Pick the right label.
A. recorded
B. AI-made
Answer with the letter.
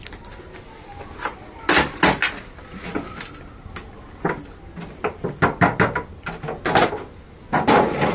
A